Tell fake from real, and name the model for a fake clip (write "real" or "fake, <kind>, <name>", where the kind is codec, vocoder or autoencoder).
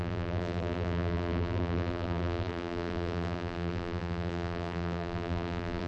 fake, vocoder, BigVGAN v2